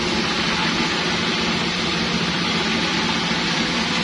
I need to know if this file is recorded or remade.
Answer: recorded